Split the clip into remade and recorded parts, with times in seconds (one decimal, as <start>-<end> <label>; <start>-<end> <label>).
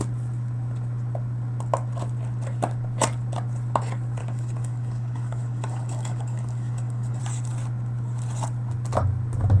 0.0-4.2 recorded; 4.2-7.2 remade; 7.2-9.6 recorded